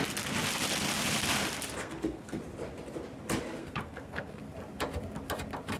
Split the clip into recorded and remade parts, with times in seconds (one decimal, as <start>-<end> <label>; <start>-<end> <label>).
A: 0.0-1.8 recorded; 1.8-2.4 remade; 2.4-3.6 recorded; 3.6-4.4 remade; 4.4-5.8 recorded